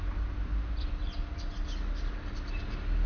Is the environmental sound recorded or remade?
recorded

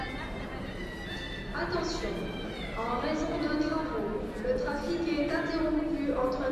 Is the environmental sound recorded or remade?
recorded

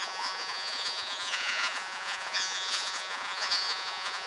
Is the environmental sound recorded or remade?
remade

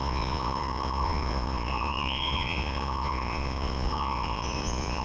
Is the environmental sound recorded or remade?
remade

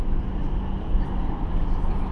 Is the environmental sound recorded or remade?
recorded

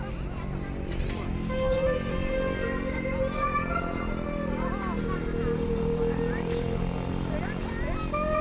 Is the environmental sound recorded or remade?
recorded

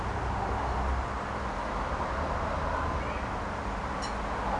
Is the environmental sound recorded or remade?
recorded